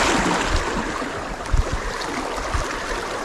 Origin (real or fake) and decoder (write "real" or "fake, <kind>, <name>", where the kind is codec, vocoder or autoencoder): real